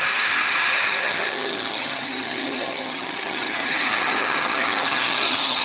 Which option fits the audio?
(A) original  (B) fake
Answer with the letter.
B